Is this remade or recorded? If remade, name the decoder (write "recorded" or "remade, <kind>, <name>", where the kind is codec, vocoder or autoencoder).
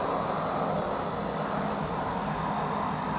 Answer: recorded